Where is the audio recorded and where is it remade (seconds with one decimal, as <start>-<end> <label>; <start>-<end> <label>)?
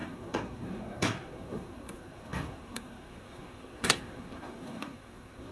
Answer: 0.0-5.5 remade